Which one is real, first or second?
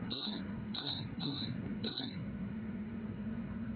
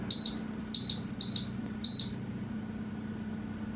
second